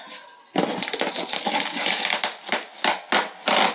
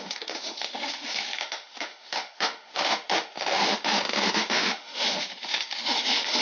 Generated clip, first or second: second